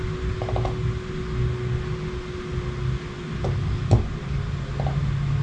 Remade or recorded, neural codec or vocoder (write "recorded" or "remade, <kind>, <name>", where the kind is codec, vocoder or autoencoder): recorded